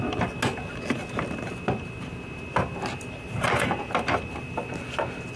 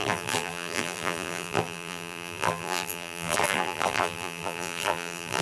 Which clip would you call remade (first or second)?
second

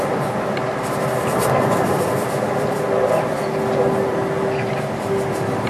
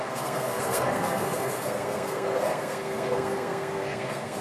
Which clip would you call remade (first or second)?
second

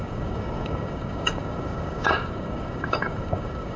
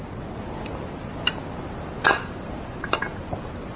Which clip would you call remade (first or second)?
first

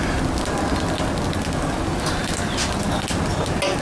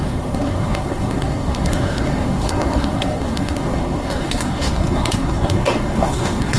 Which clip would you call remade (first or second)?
second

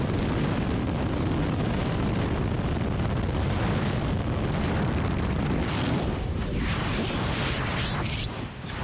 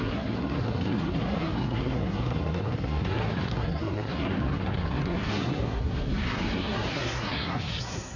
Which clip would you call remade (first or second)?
second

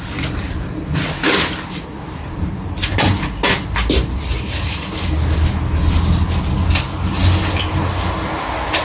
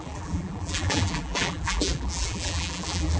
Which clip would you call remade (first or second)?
second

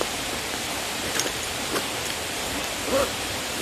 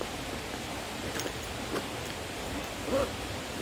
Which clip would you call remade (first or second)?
first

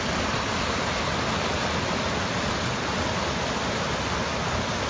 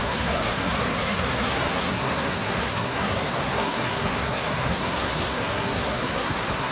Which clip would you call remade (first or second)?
second